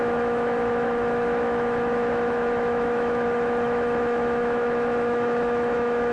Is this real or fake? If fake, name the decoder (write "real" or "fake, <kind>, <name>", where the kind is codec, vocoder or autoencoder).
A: fake, autoencoder, DAC-VAE